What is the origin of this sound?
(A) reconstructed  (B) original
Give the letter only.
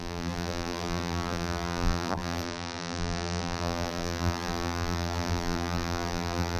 A